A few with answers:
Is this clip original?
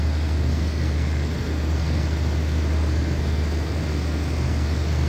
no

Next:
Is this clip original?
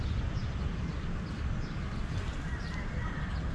yes